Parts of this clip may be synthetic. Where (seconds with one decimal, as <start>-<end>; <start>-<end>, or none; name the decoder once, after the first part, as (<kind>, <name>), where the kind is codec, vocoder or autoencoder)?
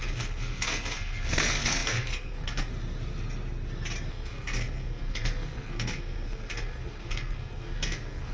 0.0-2.7 (codec, SNAC); 4.1-8.3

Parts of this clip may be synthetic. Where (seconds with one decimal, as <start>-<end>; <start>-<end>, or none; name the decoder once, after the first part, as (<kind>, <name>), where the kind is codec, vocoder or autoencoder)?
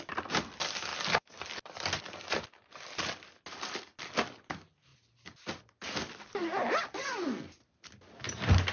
none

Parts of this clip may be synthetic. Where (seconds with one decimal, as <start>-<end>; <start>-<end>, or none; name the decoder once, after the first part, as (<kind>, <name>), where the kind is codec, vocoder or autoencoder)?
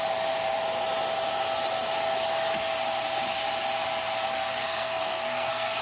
4.3-5.8 (codec, SNAC)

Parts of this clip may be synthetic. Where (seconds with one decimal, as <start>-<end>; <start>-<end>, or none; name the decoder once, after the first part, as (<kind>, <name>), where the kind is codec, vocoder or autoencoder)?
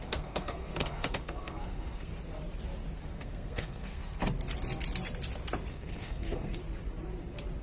0.0-2.1 (codec, SNAC); 3.0-4.2; 5.7-6.6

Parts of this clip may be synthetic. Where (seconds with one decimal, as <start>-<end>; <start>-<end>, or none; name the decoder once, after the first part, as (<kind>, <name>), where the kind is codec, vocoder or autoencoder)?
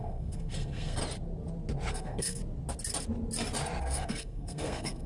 0.0-1.0 (codec, SNAC); 1.9-2.4; 3.8-5.1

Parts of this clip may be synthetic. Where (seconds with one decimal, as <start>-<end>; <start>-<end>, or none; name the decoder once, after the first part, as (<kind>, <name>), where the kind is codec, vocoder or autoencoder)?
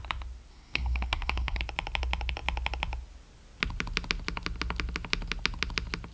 0.5-1.6 (codec, SNAC)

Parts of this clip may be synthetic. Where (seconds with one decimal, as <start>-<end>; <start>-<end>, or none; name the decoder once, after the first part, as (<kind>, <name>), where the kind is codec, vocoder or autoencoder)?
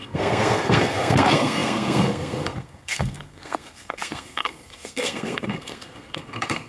0.0-6.7 (codec, SNAC)